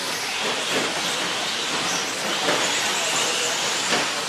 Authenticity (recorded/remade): recorded